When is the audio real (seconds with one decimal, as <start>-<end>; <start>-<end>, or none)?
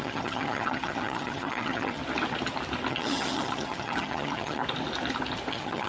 2.0-2.9; 4.6-5.5